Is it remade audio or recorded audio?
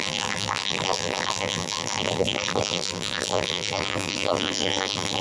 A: remade